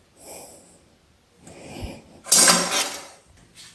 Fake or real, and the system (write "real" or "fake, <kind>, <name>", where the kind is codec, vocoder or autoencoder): real